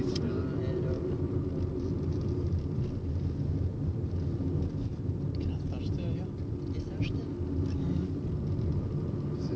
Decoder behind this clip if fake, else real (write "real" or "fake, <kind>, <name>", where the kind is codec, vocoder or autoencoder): real